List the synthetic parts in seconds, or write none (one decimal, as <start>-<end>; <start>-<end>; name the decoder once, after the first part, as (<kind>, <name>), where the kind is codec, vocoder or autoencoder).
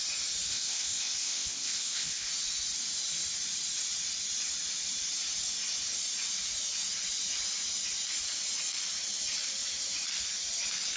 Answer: 0.5-2.3 (codec, ZipCodec)